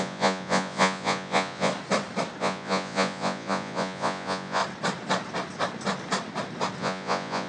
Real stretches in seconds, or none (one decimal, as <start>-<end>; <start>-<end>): 1.7-2.4; 4.6-6.8